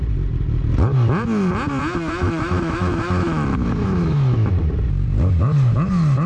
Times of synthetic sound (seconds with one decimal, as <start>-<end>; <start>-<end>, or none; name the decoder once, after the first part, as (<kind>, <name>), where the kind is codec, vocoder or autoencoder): 2.2-4.5 (autoencoder, DAC-VAE)